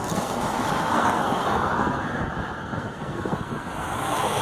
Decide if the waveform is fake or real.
fake